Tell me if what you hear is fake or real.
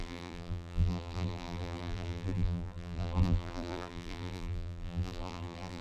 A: fake